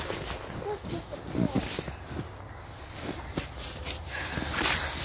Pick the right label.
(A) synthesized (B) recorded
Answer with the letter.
B